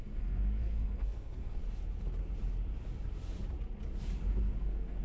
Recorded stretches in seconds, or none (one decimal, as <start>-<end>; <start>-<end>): 1.6-4.6